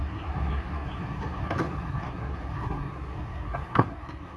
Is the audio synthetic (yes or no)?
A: yes